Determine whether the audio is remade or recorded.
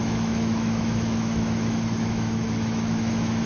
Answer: remade